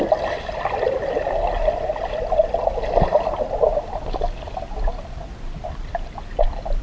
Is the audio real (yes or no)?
yes